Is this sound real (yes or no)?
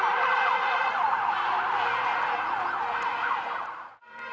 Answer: yes